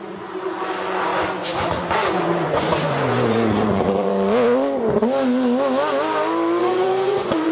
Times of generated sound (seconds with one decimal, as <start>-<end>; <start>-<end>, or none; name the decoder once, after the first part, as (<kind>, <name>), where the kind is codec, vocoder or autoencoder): 0.0-4.1 (vocoder, Vocos); 6.6-7.5